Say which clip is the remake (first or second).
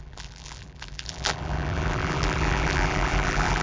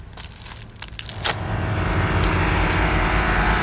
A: first